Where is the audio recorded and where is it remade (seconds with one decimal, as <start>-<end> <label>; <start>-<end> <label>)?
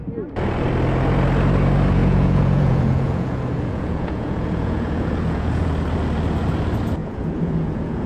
0.0-2.0 recorded; 2.0-5.7 remade; 5.7-7.0 recorded; 7.0-8.1 remade